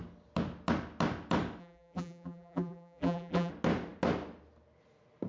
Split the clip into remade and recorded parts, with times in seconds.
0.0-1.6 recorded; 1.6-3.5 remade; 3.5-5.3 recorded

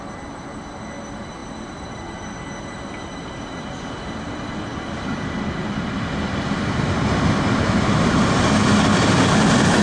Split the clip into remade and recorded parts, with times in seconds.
0.0-1.4 recorded; 1.4-2.0 remade; 2.0-4.7 recorded; 4.7-6.5 remade; 6.5-9.8 recorded

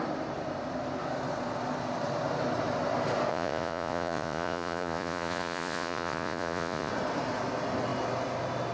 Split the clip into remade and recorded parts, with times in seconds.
0.0-3.3 recorded; 3.3-6.9 remade; 6.9-8.7 recorded